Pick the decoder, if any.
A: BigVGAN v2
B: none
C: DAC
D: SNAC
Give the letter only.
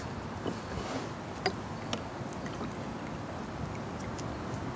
B